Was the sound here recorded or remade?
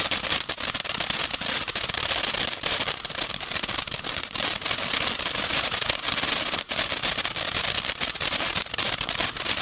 recorded